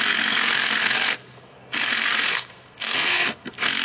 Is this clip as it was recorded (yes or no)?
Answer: no